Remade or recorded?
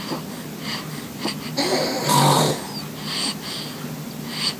recorded